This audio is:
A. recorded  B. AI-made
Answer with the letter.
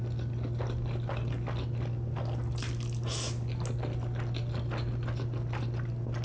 A